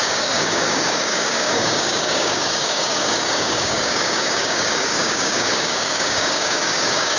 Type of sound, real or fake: fake